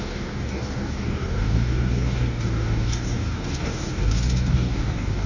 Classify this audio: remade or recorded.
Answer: remade